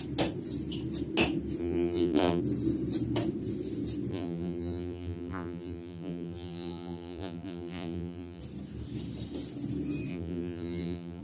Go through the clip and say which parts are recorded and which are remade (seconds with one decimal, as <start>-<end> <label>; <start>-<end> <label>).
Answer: 0.0-1.6 recorded; 1.6-2.4 remade; 2.4-4.1 recorded; 4.1-8.4 remade; 8.4-10.1 recorded; 10.1-11.2 remade